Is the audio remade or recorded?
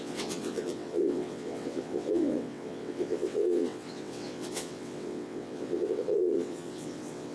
remade